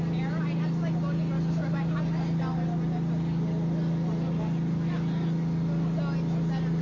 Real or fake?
real